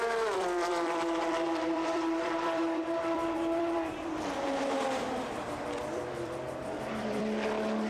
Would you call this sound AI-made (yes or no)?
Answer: yes